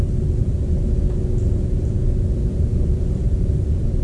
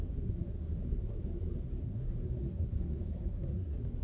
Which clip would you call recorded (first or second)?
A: first